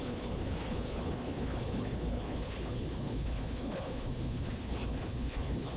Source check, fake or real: fake